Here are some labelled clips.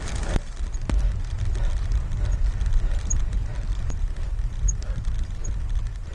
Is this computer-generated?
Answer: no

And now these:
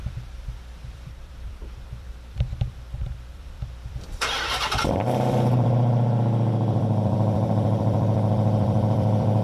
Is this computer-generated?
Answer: yes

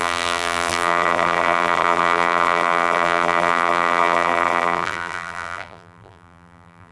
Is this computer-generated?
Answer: yes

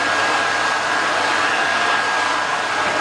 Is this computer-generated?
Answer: no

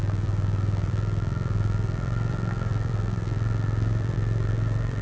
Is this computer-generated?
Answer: yes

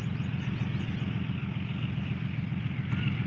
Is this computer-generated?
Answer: no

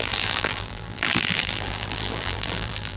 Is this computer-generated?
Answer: yes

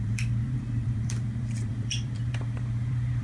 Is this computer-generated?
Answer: yes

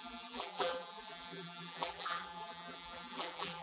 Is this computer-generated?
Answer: yes